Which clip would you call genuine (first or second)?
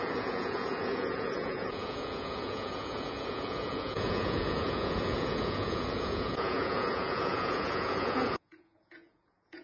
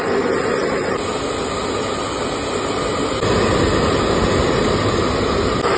second